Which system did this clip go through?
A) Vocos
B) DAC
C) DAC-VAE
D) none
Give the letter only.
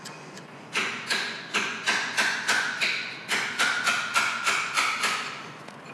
A